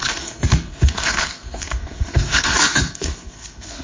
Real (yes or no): no